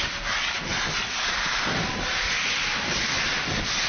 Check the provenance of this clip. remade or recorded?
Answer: recorded